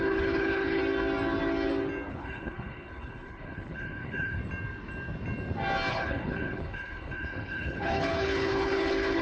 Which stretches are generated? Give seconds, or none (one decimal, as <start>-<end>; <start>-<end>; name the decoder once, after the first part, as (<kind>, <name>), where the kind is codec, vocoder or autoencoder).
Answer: 0.0-0.8 (codec, HILCodec); 2.1-4.4; 5.9-9.2